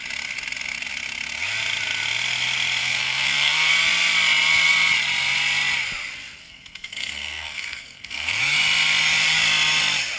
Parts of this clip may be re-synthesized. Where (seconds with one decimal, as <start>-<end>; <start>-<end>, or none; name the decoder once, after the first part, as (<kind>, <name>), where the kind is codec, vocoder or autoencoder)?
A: 2.8-3.7 (codec, SNAC); 6.4-8.4